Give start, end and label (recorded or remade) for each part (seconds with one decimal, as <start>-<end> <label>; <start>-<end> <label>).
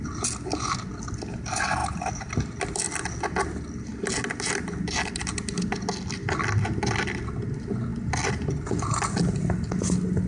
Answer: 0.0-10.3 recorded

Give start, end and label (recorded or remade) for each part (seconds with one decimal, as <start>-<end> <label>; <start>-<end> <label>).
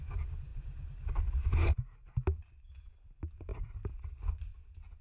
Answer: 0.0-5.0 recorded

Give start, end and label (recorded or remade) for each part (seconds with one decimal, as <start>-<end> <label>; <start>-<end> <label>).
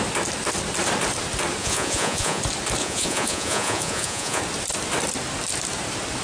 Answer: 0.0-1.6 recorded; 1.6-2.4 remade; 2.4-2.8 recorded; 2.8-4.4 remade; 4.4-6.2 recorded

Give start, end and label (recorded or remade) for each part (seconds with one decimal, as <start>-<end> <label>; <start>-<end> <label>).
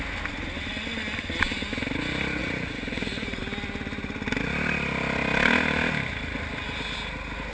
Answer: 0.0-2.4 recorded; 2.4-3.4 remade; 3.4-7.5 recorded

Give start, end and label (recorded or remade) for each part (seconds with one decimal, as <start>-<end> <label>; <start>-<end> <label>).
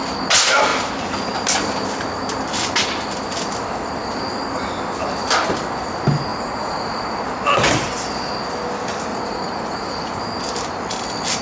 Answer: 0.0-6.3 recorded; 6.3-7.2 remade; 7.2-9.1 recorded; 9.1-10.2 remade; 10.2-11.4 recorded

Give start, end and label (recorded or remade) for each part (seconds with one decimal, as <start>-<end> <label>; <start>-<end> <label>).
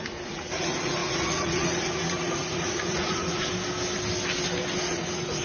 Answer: 0.0-3.5 remade; 3.5-4.9 recorded; 4.9-5.4 remade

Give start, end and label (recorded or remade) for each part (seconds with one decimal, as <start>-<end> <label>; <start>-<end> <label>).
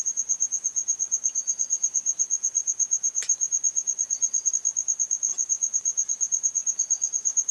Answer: 0.0-4.5 remade; 4.5-5.3 recorded; 5.3-7.5 remade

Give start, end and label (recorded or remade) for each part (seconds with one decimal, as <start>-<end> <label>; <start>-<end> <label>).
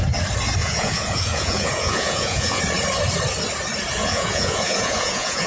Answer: 0.0-0.6 recorded; 0.6-2.6 remade; 2.6-4.0 recorded; 4.0-5.5 remade